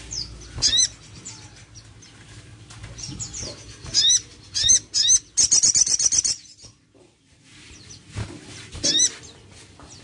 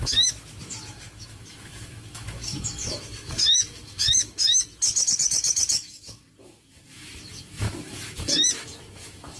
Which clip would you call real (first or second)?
first